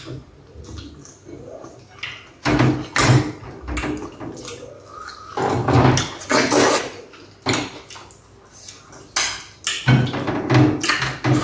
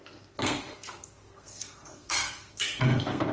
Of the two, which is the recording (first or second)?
first